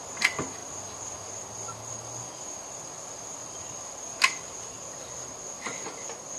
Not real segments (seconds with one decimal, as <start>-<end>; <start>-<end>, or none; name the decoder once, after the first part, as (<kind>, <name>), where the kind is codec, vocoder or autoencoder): 0.0-6.4 (vocoder, BigVGAN v2)